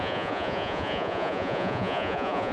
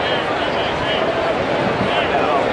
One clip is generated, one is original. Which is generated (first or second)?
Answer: first